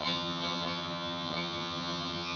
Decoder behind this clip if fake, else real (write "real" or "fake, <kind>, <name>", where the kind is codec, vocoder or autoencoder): fake, vocoder, HiFi-GAN